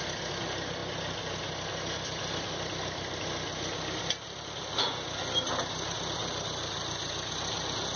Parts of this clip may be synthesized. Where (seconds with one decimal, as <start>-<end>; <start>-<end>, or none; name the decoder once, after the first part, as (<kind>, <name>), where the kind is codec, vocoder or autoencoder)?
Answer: none